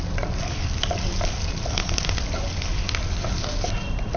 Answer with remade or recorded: remade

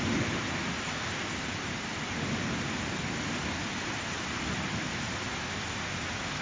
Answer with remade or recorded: recorded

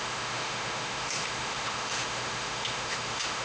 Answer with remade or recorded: remade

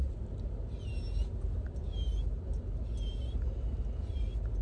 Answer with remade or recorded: recorded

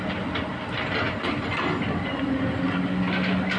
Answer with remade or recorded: recorded